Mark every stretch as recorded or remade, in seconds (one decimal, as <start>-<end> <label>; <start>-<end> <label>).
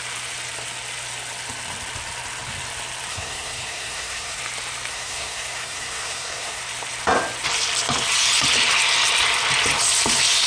0.0-3.1 recorded; 3.1-4.4 remade; 4.4-4.9 recorded; 4.9-6.6 remade; 6.6-10.5 recorded